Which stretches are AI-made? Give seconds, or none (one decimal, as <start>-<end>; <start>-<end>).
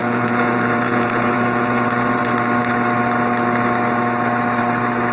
0.0-2.2